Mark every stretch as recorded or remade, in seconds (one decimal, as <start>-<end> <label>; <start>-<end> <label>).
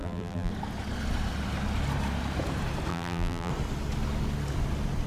0.0-0.5 remade; 0.5-2.9 recorded; 2.9-3.5 remade; 3.5-5.1 recorded